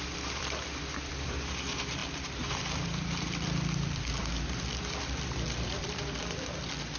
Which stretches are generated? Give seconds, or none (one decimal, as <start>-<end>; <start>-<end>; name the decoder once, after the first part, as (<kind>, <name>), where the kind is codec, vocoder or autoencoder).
0.0-7.0 (vocoder, BigVGAN v2)